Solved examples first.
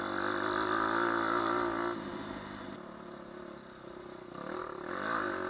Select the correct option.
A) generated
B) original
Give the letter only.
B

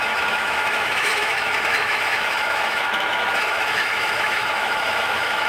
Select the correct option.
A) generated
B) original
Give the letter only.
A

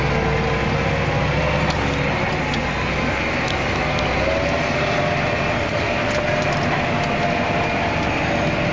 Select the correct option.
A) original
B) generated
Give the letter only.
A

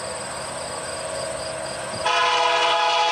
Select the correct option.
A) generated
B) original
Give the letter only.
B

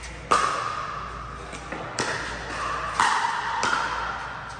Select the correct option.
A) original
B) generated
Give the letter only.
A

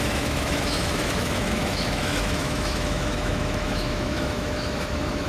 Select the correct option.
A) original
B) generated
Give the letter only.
B